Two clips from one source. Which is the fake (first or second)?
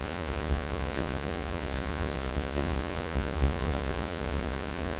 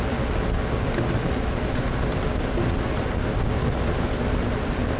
first